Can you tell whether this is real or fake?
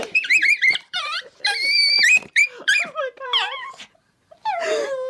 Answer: fake